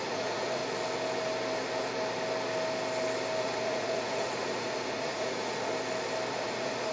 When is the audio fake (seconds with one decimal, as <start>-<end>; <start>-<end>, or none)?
0.0-0.6; 3.4-5.7; 6.3-6.9